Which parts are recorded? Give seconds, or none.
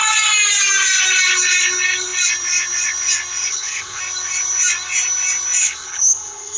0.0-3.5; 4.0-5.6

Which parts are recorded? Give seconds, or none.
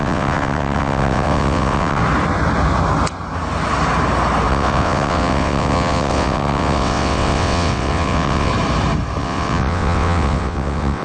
2.0-4.5; 8.5-9.2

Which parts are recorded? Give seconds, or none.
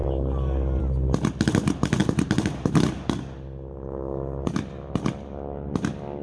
0.0-6.2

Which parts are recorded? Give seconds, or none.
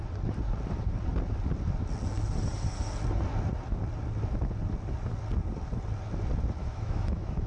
0.0-6.6